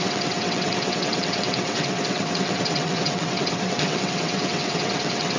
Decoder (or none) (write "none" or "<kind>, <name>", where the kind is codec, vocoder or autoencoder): vocoder, WaveNeXt